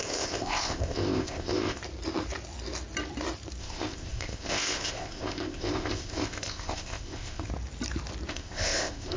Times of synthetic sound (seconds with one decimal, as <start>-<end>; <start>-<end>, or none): 0.0-1.8; 3.6-7.5; 8.3-9.2